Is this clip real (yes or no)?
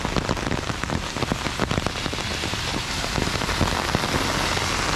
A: yes